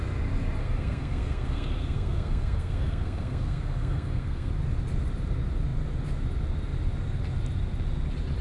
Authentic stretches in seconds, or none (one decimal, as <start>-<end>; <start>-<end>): 0.0-0.6; 4.5-8.4